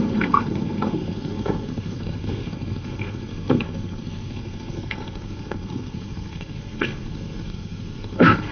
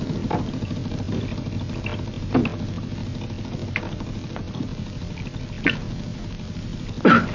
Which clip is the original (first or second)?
second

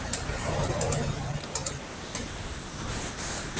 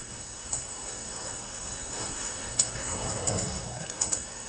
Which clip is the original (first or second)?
first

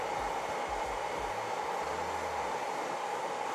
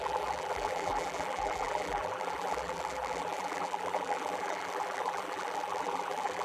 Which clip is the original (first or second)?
first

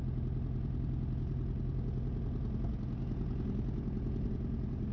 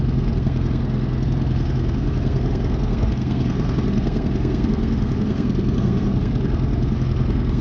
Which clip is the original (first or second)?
first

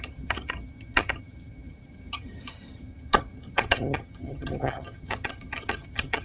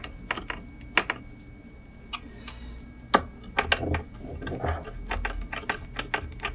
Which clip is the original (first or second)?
second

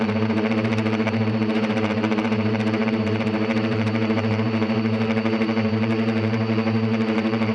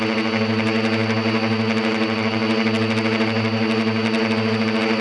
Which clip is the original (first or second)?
second